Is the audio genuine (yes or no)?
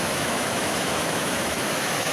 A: no